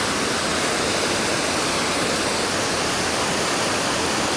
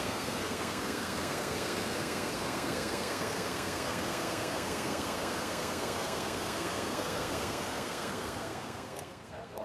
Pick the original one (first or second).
first